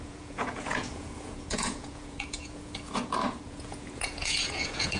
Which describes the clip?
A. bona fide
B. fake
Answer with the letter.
B